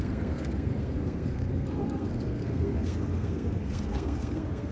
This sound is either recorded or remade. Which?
remade